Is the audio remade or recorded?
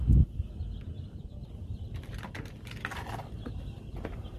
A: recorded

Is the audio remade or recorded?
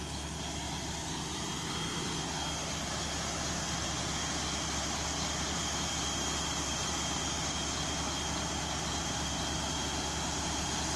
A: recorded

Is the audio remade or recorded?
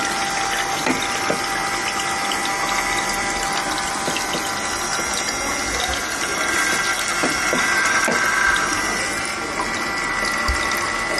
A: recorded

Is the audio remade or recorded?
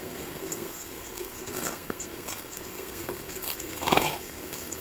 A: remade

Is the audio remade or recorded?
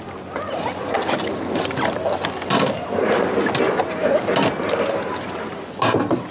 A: recorded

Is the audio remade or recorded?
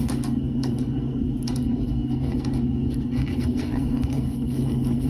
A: remade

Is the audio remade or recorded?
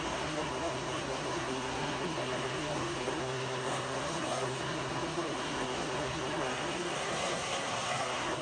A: remade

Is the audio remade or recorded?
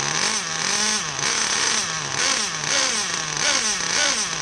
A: recorded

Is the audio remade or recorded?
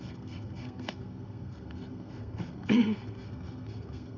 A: remade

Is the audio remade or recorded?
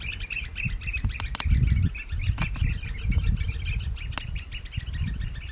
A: recorded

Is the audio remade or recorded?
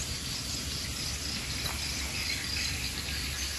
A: recorded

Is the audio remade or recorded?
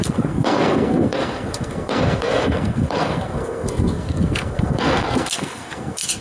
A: remade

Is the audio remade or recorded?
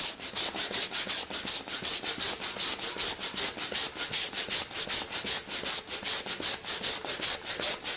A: recorded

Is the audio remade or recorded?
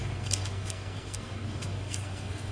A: remade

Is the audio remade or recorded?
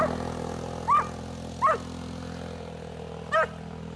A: recorded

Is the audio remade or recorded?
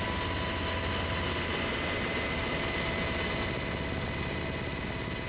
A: recorded